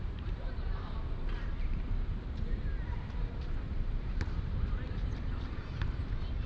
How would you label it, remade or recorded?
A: remade